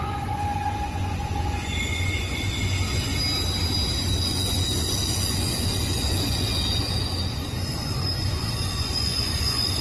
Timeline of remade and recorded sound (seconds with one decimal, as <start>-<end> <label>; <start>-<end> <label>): 0.0-3.1 remade; 3.1-4.2 recorded; 4.2-6.5 remade; 6.5-7.3 recorded; 7.3-9.8 remade